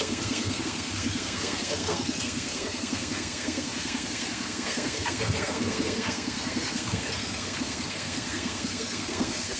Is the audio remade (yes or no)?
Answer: yes